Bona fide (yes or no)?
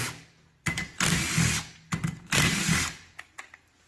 yes